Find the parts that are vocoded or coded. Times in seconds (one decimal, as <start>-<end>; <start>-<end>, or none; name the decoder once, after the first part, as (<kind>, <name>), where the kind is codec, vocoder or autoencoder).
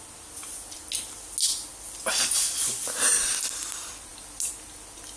none